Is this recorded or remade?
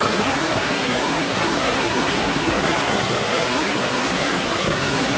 remade